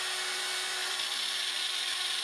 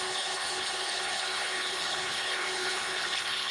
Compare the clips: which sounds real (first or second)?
first